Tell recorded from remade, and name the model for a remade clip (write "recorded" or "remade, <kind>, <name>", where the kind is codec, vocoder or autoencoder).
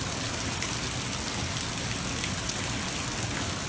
recorded